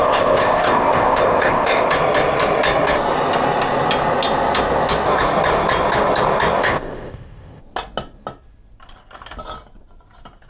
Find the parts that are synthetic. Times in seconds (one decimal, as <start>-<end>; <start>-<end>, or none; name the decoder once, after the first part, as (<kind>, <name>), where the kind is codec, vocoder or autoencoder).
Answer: 0.0-1.9 (codec, ZipCodec); 6.6-7.6

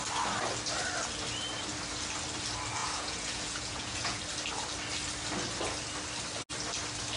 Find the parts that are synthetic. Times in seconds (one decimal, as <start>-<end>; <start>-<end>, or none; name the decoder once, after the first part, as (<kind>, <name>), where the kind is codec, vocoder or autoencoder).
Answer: 2.8-4.2 (vocoder, Vocos)